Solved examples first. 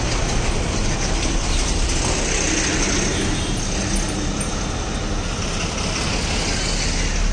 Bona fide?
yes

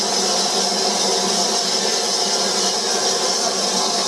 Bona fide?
yes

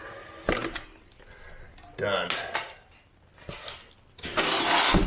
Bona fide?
yes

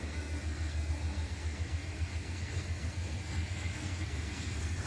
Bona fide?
no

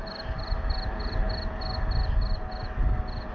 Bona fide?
yes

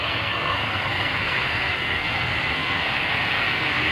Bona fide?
no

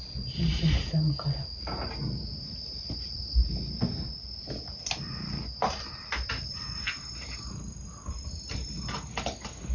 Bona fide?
yes